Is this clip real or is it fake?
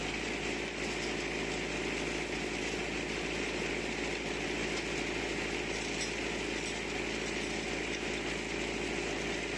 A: real